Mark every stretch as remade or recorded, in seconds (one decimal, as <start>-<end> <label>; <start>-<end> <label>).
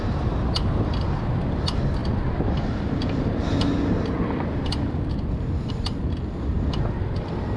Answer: 0.0-7.6 recorded